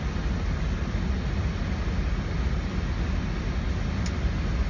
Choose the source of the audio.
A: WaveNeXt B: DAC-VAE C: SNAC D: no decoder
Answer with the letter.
D